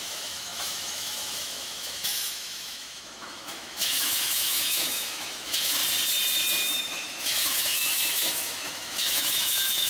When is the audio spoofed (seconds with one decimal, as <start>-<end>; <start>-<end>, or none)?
0.0-5.8; 6.8-9.9